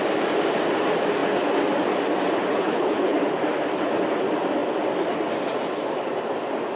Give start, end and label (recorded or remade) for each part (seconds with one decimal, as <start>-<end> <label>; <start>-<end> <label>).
0.0-2.5 recorded; 2.5-3.2 remade; 3.2-6.8 recorded